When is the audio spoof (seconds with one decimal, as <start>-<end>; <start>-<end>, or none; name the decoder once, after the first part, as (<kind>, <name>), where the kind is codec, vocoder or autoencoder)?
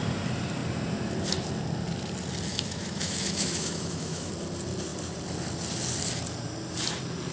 2.5-4.3 (autoencoder, DAC-VAE)